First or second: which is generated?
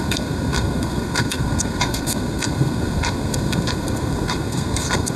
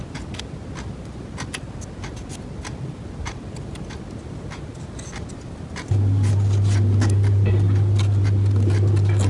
first